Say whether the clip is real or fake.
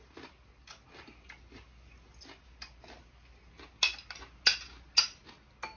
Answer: real